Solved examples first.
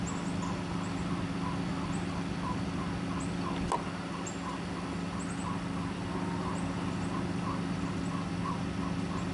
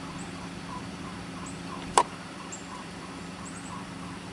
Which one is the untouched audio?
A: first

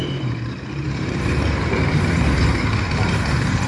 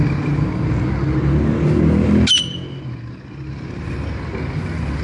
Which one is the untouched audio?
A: second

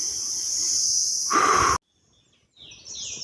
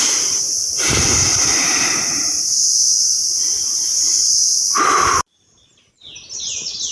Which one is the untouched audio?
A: first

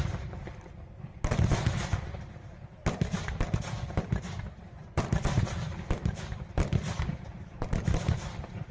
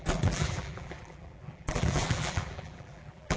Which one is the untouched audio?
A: first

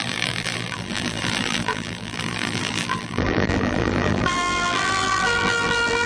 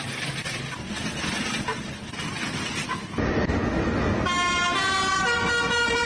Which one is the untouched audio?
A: second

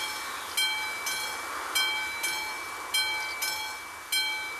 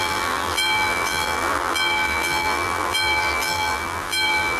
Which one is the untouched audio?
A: first